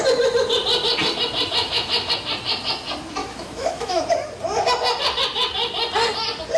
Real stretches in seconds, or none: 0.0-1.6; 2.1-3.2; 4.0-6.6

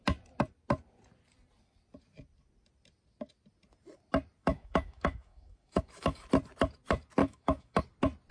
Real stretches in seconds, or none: 0.0-4.4; 6.3-7.2; 7.8-8.3

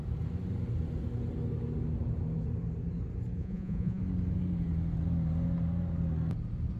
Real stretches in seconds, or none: 0.0-3.4; 4.0-6.8

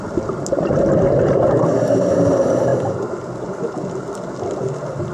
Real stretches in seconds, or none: 0.0-5.1

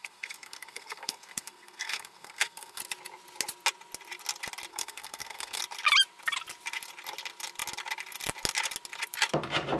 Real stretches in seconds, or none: 2.8-4.7; 5.6-9.8